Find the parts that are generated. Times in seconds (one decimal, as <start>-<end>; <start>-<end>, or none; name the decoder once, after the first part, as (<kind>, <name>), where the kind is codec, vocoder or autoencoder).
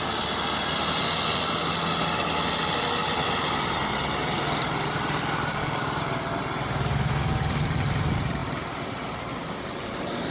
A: 5.5-6.0 (codec, DAC)